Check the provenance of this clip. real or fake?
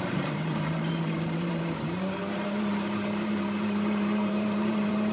fake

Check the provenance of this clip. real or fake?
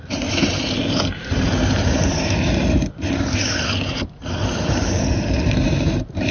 fake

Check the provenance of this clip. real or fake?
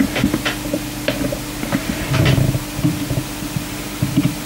real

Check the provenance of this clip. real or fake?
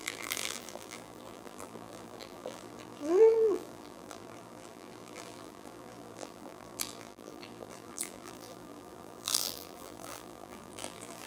fake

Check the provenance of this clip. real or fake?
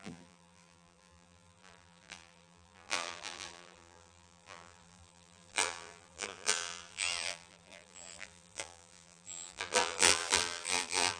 fake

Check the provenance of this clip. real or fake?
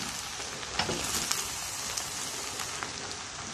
real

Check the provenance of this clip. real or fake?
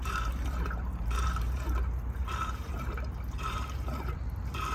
fake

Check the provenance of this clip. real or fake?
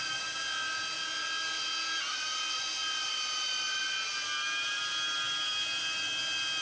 real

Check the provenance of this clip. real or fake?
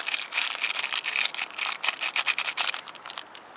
real